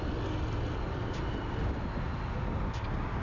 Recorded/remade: recorded